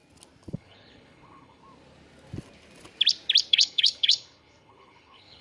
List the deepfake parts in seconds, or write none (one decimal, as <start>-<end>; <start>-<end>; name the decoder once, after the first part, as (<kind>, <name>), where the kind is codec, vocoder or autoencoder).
0.5-1.6 (codec, HILCodec); 3.5-5.4